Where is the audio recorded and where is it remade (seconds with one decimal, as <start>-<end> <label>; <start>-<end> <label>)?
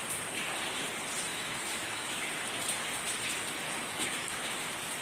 0.0-1.3 recorded; 1.3-2.3 remade; 2.3-3.8 recorded; 3.8-4.5 remade; 4.5-5.0 recorded